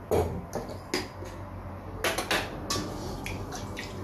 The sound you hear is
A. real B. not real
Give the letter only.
A